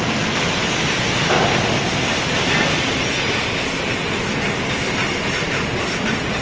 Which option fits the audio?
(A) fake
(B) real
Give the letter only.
B